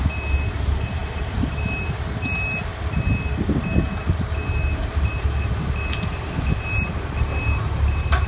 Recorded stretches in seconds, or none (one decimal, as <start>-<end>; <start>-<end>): 0.0-8.3